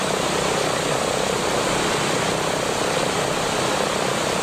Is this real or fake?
real